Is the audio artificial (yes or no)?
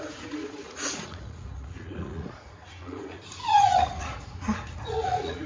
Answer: yes